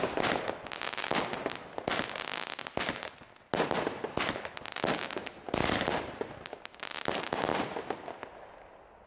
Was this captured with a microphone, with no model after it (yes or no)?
yes